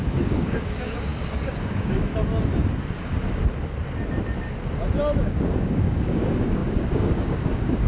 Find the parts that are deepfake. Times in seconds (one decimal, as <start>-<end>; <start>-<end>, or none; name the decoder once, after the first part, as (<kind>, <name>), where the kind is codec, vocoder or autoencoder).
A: 0.0-2.1 (codec, DAC); 5.2-7.9